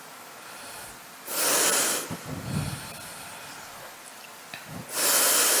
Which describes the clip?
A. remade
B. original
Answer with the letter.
B